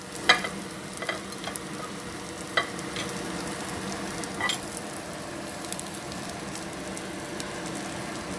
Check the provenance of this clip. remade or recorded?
recorded